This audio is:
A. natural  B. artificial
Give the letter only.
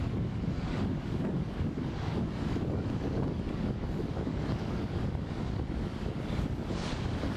B